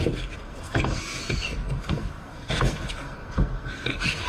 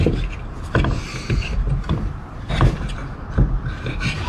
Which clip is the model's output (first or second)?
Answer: first